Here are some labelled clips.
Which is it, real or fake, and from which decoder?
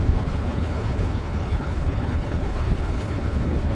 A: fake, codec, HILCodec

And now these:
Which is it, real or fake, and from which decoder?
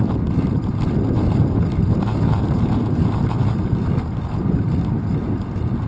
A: real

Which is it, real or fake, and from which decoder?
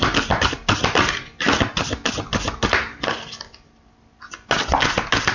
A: real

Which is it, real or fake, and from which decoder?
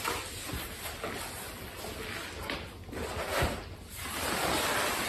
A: real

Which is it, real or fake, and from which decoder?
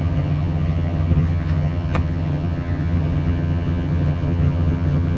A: fake, vocoder, HiFi-GAN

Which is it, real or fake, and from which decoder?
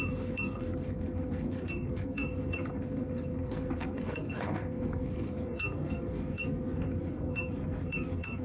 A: fake, codec, SNAC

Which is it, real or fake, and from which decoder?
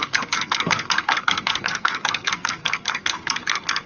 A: fake, codec, SNAC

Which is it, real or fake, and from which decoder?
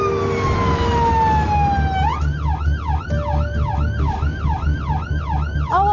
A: real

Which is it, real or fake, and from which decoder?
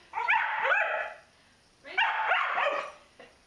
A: real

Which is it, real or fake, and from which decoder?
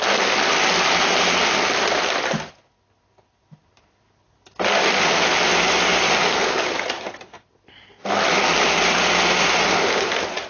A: real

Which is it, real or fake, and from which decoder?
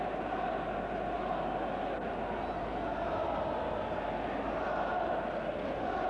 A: real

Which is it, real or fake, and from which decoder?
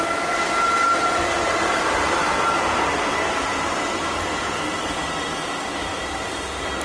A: real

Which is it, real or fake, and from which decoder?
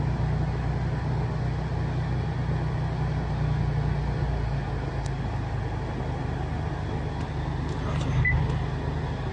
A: real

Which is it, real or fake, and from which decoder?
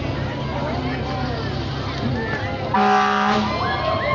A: real